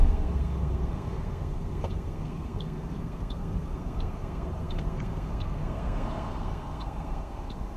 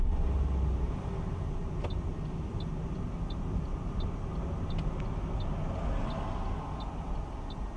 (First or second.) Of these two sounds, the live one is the second